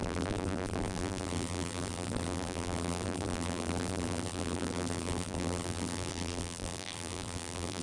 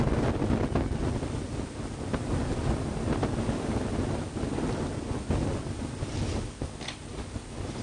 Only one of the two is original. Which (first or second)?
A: second